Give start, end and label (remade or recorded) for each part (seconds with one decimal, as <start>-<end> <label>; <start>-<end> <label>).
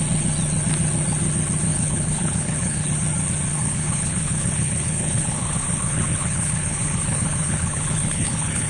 0.0-1.7 recorded; 1.7-2.9 remade; 2.9-3.5 recorded; 3.5-8.7 remade